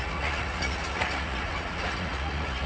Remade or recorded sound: remade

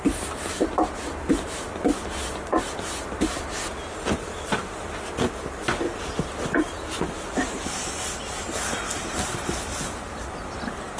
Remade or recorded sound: recorded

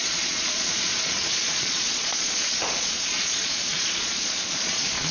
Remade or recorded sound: remade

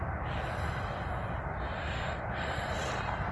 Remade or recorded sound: recorded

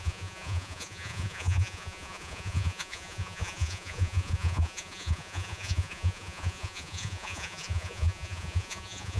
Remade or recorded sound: remade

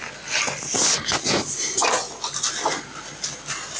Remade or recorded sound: recorded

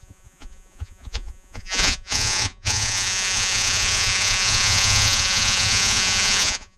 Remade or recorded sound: remade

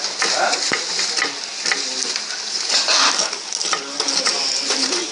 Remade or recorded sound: recorded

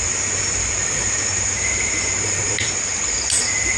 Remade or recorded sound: recorded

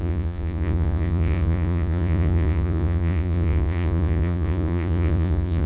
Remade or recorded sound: remade